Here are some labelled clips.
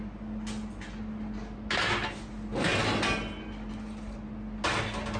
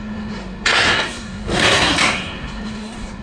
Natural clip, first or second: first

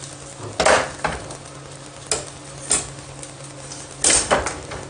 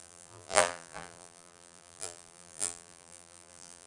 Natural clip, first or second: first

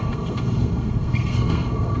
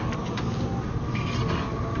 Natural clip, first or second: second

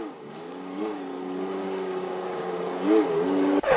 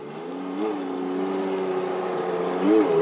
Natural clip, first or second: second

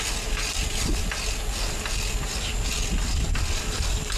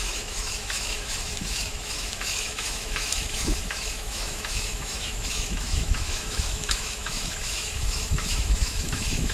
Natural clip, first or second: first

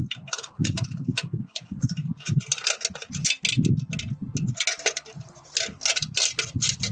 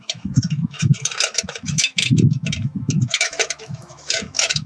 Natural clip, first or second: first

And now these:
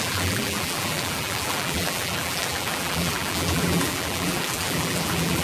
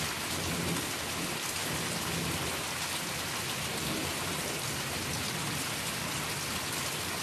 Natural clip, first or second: second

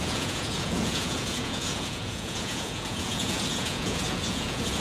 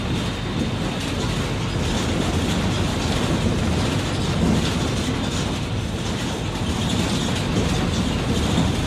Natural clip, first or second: second